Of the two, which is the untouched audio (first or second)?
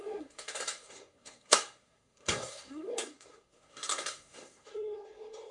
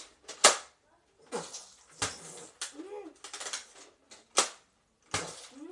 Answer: second